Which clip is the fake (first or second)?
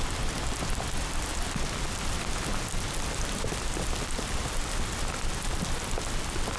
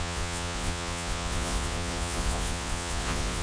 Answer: second